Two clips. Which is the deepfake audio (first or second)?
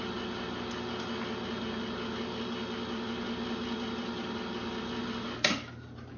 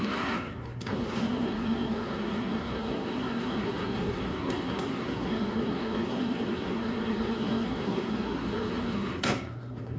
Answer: second